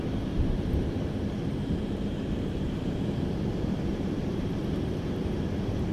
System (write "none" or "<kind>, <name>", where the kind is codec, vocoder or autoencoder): vocoder, BigVGAN v2